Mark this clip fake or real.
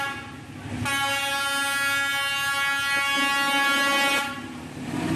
real